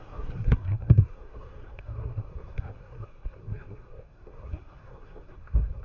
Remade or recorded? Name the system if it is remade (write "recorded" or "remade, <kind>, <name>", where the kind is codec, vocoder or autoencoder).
remade, codec, SNAC